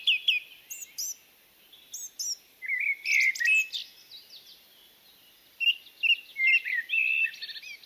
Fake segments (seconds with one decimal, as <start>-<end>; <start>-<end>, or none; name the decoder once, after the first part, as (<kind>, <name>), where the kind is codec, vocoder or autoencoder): 6.3-7.1 (vocoder, BigVGAN v2)